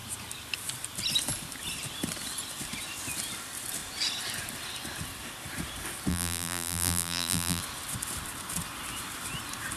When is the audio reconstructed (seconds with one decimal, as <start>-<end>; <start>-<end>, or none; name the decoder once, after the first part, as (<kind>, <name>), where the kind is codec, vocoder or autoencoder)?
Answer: 6.1-7.6 (vocoder, BigVGAN v2)